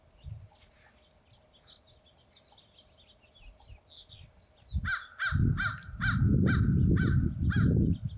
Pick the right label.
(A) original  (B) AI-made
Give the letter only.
A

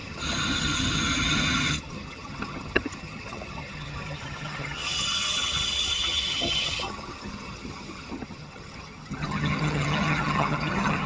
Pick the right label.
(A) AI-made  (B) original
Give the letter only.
A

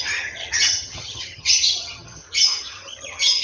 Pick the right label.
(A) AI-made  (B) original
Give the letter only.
A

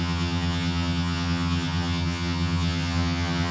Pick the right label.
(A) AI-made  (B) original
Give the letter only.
A